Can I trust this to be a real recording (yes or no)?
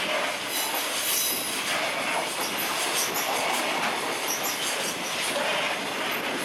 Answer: yes